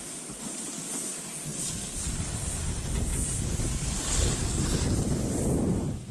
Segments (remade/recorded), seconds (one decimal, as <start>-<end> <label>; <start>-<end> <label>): 0.0-6.1 recorded